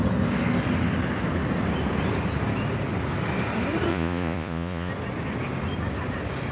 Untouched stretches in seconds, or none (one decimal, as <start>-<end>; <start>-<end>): 0.0-3.9; 4.9-6.5